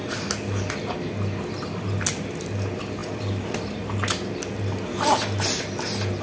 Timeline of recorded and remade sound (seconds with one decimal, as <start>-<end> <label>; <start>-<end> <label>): 0.0-6.2 recorded